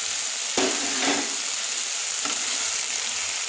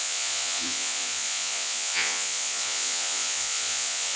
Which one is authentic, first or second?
first